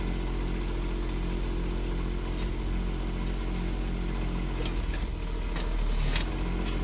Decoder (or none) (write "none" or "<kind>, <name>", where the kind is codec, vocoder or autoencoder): none